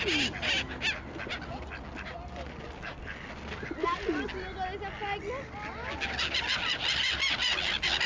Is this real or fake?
real